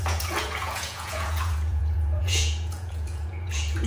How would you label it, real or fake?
fake